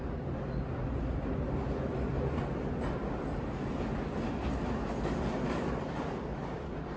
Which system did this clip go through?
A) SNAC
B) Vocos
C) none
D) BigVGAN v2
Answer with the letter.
C